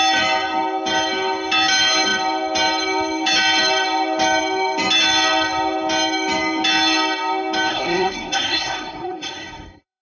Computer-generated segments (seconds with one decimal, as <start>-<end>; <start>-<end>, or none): 7.7-10.0